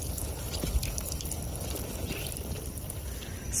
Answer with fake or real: real